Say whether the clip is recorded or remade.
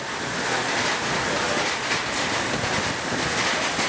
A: recorded